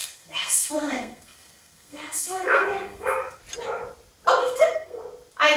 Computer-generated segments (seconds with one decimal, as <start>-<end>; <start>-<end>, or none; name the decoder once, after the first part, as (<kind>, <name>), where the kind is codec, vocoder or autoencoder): 0.0-3.4 (codec, SNAC); 4.4-5.0